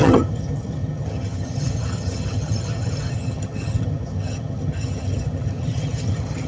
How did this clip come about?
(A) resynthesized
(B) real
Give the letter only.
A